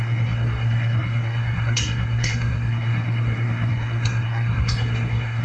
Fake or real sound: fake